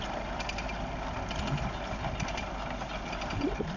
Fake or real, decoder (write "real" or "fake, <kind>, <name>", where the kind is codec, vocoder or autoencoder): real